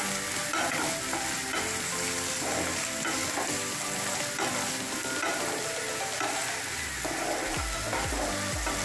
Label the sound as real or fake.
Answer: real